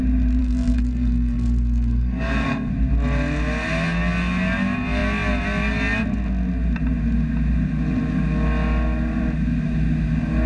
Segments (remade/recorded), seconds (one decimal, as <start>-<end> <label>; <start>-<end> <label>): 0.0-0.4 recorded; 0.4-2.7 remade; 2.7-10.5 recorded